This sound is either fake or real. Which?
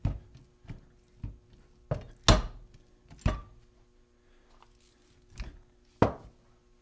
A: real